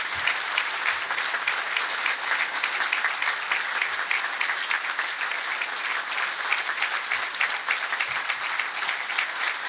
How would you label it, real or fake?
real